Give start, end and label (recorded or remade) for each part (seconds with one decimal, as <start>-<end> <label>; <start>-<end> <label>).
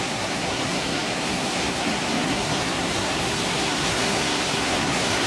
0.0-5.3 remade